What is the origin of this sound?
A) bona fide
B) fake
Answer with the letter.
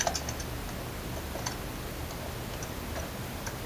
A